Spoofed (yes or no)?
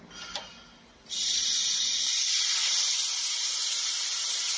no